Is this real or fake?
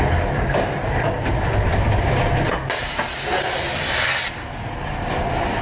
real